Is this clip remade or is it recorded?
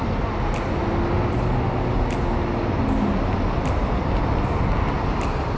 recorded